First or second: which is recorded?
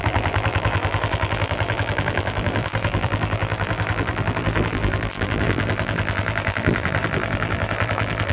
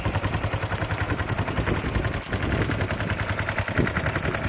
second